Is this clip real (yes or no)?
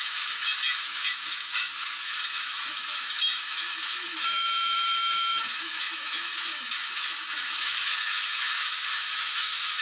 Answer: no